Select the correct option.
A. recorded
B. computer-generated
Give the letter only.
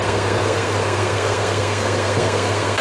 B